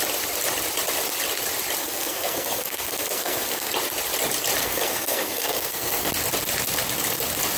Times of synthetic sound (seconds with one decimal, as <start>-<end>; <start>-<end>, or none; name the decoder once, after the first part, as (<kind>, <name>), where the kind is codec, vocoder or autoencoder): 1.8-3.7 (codec, SNAC); 4.6-6.1